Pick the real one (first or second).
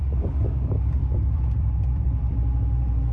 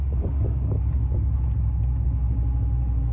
second